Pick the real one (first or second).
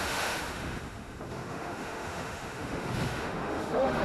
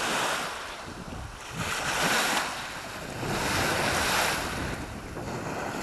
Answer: second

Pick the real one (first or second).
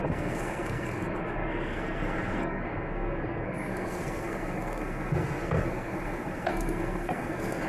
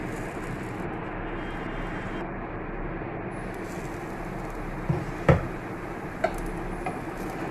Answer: second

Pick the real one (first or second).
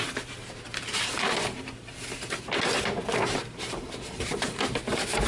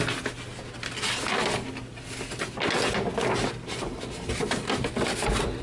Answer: second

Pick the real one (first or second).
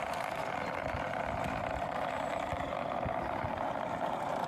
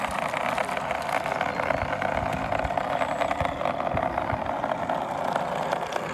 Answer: second